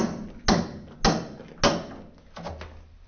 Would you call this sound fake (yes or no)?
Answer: no